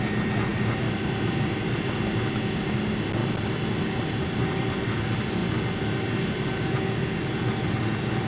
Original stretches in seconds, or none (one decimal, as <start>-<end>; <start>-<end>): 0.0-0.5; 2.4-3.2; 4.7-8.3